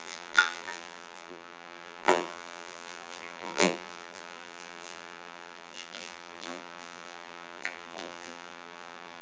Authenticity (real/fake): fake